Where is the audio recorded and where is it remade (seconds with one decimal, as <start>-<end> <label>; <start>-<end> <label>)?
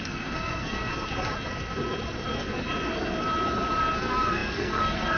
0.0-0.9 remade; 0.9-4.0 recorded; 4.0-5.2 remade